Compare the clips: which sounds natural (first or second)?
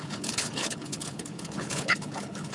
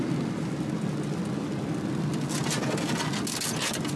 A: second